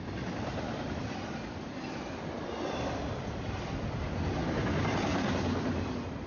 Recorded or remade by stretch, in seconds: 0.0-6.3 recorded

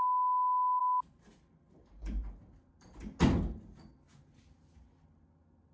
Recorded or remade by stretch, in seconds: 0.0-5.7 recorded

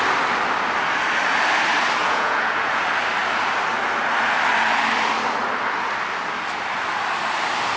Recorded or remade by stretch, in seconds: 0.0-2.0 recorded; 2.0-2.8 remade; 2.8-7.8 recorded